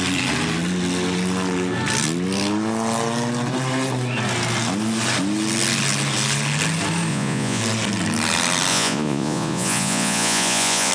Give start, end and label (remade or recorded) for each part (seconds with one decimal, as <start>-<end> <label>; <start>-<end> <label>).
0.0-7.1 recorded; 7.1-7.6 remade; 7.6-8.7 recorded; 8.7-10.9 remade